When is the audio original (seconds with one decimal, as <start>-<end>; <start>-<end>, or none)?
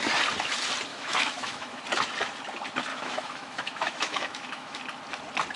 0.0-0.9; 1.8-2.9; 4.8-5.6